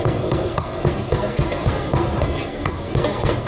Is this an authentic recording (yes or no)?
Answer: no